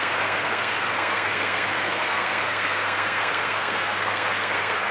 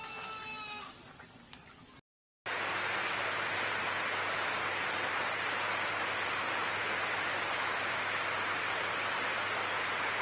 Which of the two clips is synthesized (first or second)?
first